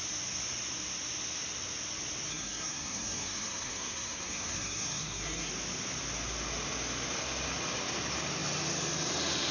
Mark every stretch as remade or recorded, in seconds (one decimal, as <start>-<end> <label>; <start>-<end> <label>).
0.0-2.3 recorded; 2.3-5.5 remade; 5.5-9.5 recorded